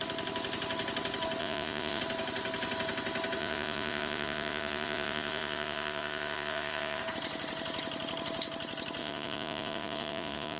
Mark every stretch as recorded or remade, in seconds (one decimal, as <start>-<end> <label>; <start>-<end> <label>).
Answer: 0.0-1.4 recorded; 1.4-2.0 remade; 2.0-3.4 recorded; 3.4-7.0 remade; 7.0-9.0 recorded; 9.0-10.6 remade